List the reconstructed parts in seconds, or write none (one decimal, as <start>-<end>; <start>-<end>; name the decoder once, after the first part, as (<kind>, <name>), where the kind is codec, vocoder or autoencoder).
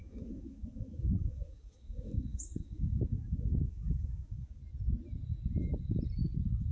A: 0.0-4.6 (autoencoder, DAC-VAE)